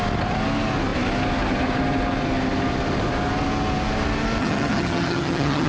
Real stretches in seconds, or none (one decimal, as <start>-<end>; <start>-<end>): 0.0-4.4